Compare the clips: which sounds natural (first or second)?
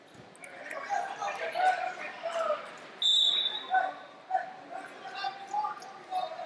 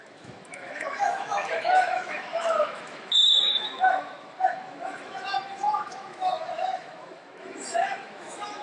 first